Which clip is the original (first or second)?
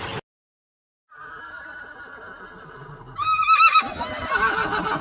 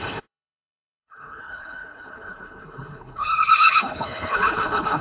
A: first